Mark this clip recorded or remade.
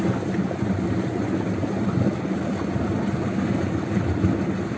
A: recorded